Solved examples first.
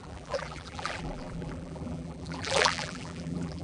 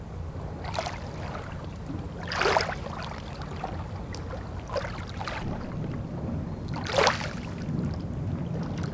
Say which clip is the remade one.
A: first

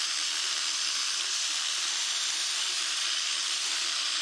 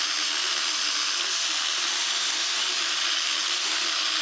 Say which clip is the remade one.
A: first